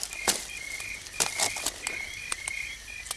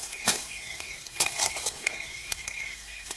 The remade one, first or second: second